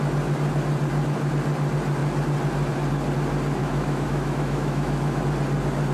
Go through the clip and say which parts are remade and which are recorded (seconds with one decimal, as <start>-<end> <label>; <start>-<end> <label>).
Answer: 0.0-3.6 recorded; 3.6-5.2 remade; 5.2-5.9 recorded